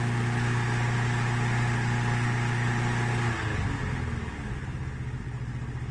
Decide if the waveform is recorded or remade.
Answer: recorded